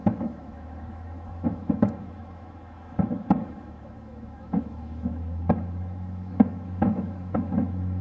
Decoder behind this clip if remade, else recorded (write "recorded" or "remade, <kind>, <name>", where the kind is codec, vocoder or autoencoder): remade, autoencoder, DAC-VAE